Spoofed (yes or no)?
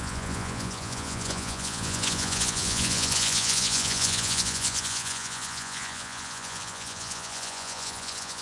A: yes